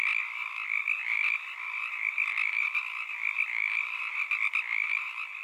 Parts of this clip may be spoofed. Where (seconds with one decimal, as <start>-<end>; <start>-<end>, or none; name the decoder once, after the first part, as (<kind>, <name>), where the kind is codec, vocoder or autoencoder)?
none